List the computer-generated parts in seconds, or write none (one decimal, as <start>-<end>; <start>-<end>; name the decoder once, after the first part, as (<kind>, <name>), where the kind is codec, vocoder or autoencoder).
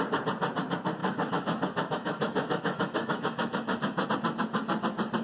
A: 1.0-4.1 (autoencoder, DAC-VAE)